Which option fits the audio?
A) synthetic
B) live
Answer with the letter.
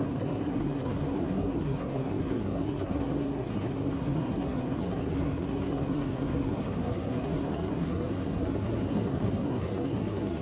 A